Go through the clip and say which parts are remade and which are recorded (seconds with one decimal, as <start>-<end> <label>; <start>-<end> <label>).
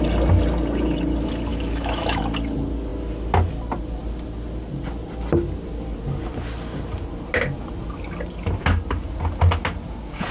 0.0-1.5 recorded; 1.5-2.2 remade; 2.2-10.3 recorded